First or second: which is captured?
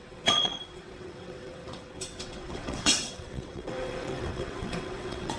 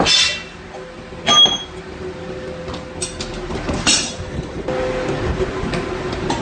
second